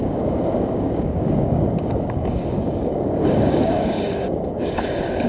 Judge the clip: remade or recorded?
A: remade